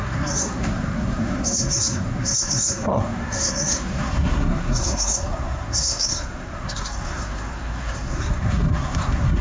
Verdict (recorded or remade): remade